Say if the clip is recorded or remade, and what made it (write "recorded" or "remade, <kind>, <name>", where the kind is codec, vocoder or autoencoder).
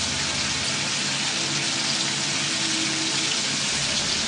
recorded